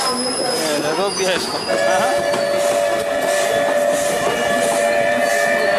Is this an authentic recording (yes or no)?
yes